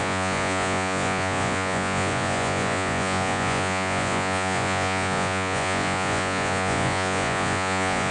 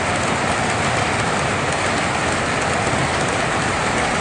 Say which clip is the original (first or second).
second